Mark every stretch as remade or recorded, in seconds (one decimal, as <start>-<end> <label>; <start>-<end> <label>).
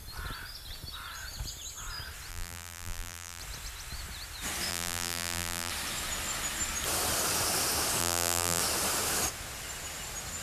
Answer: 0.0-2.3 recorded; 2.3-3.4 remade; 3.4-4.7 recorded; 4.7-5.7 remade; 5.7-8.0 recorded; 8.0-8.6 remade; 8.6-10.4 recorded